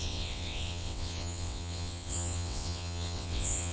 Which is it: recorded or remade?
remade